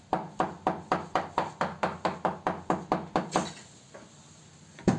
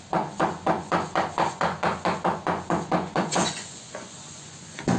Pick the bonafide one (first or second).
first